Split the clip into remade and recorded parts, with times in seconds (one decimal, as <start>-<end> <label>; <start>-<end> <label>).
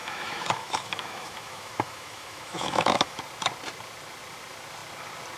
0.0-3.2 remade; 3.2-5.4 recorded